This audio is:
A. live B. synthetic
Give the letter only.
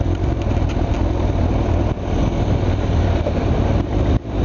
A